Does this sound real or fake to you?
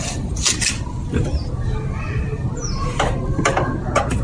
real